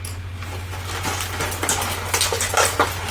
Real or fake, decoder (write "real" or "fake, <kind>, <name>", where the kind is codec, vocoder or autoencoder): real